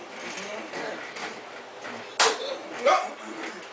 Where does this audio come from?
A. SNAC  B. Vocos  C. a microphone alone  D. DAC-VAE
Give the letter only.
C